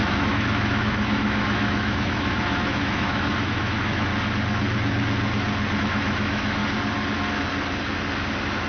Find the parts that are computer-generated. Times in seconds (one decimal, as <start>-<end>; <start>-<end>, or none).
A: 0.0-4.1; 5.8-6.6